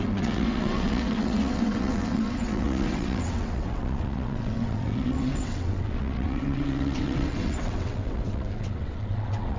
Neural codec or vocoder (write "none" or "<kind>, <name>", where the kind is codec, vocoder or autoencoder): vocoder, WaveNeXt